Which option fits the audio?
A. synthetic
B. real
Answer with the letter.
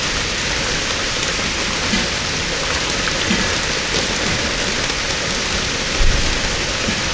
B